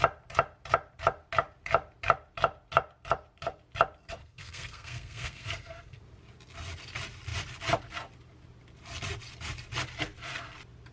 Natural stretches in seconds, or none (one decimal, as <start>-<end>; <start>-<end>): 0.0-4.2; 6.0-10.9